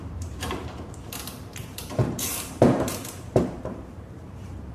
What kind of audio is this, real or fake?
fake